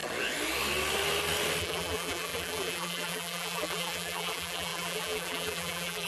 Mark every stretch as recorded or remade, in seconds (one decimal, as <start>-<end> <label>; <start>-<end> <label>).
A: 0.0-1.6 recorded; 1.6-6.1 remade

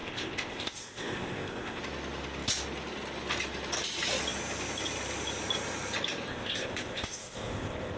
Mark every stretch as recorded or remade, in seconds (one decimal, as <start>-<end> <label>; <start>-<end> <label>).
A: 0.0-1.8 remade; 1.8-6.3 recorded; 6.3-8.0 remade